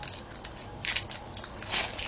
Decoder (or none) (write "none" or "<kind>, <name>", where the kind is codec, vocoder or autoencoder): none